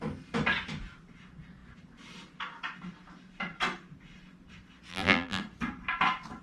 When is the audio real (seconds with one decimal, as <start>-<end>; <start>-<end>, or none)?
0.0-4.9; 5.4-6.4